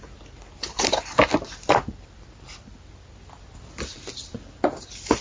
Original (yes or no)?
no